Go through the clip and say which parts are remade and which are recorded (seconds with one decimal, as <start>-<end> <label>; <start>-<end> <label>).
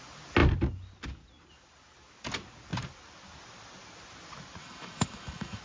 0.0-4.6 recorded; 4.6-5.6 remade